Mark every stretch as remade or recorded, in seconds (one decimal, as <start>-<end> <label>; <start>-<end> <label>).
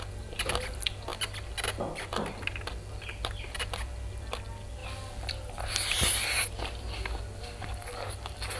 0.0-8.6 recorded